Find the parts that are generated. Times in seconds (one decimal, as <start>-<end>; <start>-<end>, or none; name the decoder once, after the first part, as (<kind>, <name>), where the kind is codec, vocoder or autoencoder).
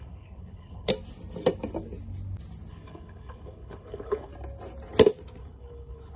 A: 0.0-0.9 (codec, HILCodec); 2.7-4.3; 5.4-6.2